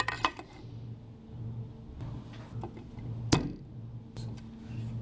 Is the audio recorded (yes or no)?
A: yes